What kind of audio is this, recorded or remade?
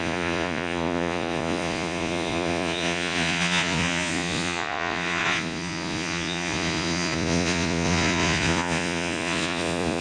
remade